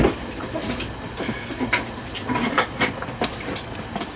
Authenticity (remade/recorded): recorded